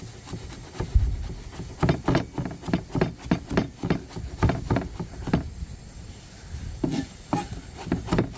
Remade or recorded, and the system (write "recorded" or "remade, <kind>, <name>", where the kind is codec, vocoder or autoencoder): recorded